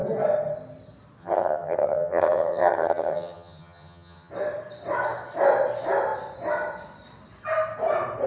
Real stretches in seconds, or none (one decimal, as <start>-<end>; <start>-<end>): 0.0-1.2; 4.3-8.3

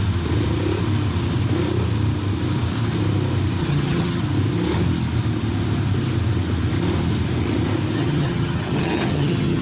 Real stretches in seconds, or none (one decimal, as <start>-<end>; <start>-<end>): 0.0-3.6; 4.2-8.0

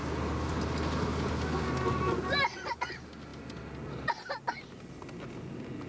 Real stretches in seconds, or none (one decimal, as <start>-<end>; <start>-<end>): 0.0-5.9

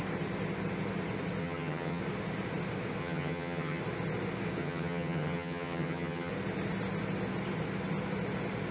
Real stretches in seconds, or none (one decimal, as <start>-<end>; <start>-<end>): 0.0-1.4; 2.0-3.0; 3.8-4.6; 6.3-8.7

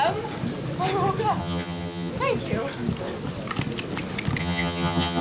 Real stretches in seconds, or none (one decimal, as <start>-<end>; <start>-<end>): 0.0-1.4; 2.1-4.4

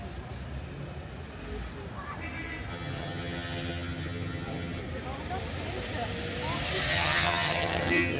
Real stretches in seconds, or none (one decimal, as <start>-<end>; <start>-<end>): 0.0-2.7; 4.8-6.9